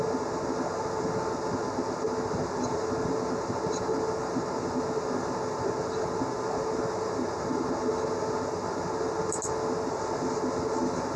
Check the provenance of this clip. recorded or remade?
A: recorded